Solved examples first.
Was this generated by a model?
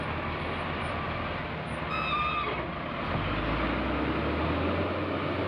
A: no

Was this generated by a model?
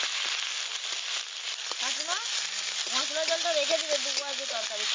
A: no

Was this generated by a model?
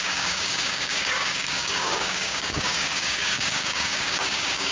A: yes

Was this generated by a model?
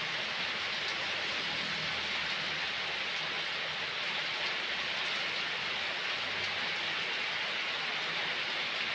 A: no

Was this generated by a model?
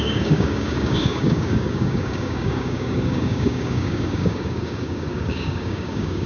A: yes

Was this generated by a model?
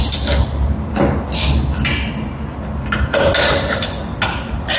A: no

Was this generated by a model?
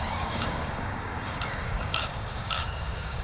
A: yes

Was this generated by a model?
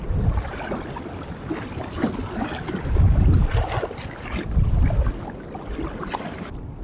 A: no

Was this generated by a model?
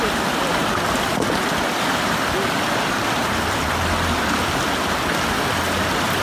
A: no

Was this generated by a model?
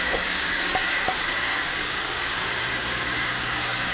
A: yes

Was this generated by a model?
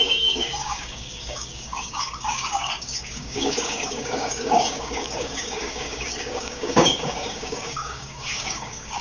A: yes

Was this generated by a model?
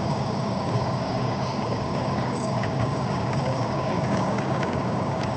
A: yes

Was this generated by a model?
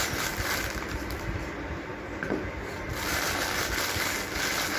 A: no